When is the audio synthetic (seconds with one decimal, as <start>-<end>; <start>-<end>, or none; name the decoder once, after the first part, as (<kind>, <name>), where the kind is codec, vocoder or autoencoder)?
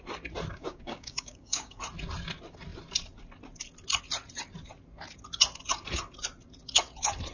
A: 0.5-1.8 (codec, DAC)